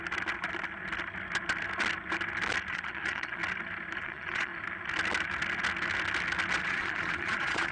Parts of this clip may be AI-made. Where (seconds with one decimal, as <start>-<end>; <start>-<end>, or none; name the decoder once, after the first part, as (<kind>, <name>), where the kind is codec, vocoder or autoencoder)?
2.7-3.4 (vocoder, Vocos); 4.0-4.5; 6.6-7.7